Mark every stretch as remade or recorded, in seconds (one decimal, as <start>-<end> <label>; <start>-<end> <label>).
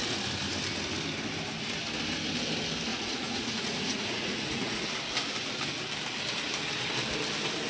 0.0-2.9 recorded; 2.9-4.8 remade; 4.8-7.7 recorded